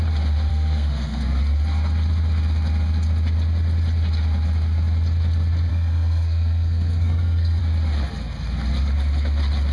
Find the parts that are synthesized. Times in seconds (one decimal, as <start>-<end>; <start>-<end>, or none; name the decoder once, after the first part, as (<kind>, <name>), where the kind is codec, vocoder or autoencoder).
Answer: 0.5-1.2 (codec, SNAC); 5.7-7.6